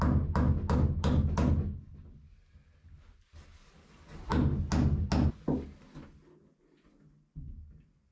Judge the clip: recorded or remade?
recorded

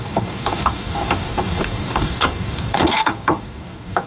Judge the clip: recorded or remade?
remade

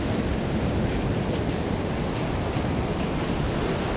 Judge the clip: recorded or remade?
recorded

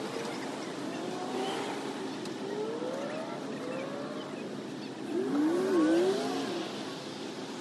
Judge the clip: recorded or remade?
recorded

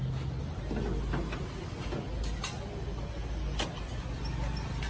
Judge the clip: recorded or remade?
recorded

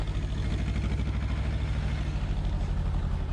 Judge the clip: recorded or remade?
recorded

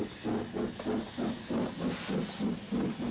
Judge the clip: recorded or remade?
recorded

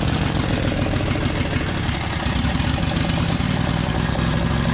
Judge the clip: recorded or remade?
recorded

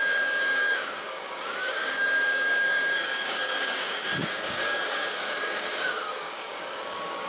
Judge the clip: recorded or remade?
remade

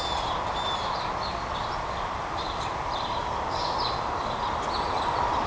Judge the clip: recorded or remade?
recorded